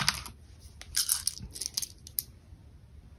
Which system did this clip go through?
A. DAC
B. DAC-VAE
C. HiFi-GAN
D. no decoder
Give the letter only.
D